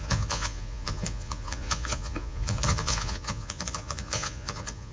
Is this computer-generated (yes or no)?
yes